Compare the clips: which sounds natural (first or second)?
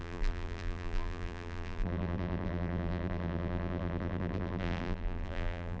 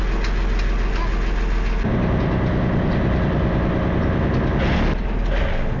second